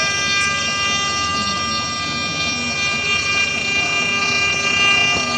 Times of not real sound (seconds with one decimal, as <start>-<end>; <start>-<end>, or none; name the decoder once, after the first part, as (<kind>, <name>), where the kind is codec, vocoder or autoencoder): none

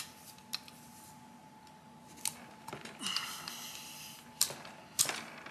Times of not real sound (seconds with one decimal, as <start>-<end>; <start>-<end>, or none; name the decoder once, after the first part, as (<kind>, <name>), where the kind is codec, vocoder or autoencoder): none

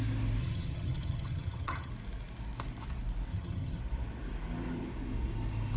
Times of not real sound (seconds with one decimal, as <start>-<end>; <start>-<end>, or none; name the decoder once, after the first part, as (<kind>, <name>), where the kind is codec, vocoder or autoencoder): 0.4-1.9 (vocoder, HiFi-GAN); 3.3-3.8